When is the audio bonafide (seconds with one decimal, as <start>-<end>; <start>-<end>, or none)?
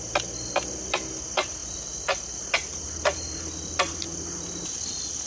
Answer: 0.0-5.3